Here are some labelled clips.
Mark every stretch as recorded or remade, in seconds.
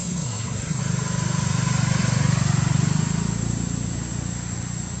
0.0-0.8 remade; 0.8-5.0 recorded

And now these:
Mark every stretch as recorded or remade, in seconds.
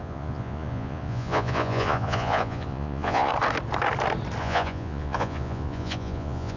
0.0-3.3 remade; 3.3-4.4 recorded; 4.4-6.6 remade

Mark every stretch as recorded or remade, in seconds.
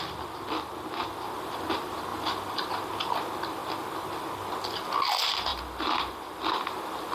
0.0-7.1 recorded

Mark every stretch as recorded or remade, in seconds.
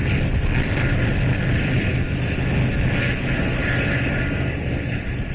0.0-1.9 remade; 1.9-5.3 recorded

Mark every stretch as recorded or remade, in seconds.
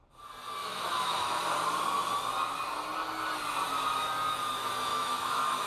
0.0-0.6 recorded; 0.6-1.4 remade; 1.4-4.9 recorded; 4.9-5.7 remade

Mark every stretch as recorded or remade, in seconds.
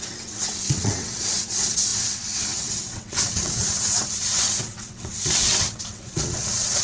0.0-6.8 remade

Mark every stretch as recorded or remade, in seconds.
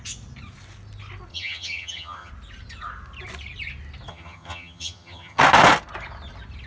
0.0-1.3 recorded; 1.3-2.3 remade; 2.3-4.1 recorded; 4.1-5.4 remade; 5.4-6.7 recorded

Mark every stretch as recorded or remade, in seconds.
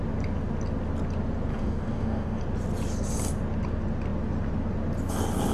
0.0-1.5 recorded; 1.5-2.4 remade; 2.4-5.5 recorded